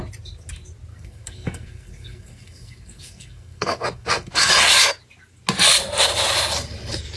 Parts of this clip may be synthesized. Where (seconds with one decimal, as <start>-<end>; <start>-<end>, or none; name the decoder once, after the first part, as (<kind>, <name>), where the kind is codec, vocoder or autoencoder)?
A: 0.9-4.5 (codec, SNAC)